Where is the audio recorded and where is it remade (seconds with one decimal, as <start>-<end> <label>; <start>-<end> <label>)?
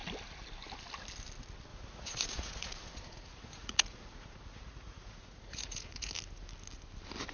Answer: 0.0-1.7 recorded; 1.7-6.1 remade; 6.1-7.3 recorded